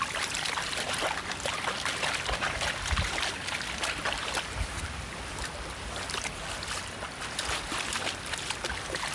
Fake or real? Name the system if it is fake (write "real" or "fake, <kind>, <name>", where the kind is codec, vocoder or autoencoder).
real